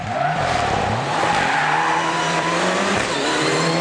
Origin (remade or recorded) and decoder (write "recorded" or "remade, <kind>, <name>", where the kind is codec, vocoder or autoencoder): remade, vocoder, BigVGAN v2